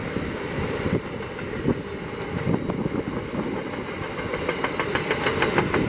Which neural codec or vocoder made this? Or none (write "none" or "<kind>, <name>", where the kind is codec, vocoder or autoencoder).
none